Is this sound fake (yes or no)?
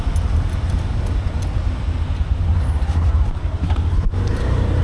no